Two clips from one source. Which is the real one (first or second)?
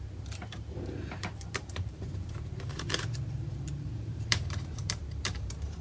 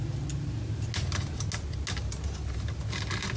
second